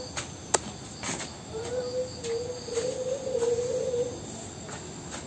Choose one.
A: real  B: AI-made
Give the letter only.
A